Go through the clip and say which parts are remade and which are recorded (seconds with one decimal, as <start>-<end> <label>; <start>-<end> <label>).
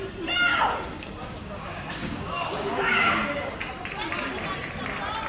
0.0-0.5 recorded; 0.5-3.7 remade; 3.7-5.3 recorded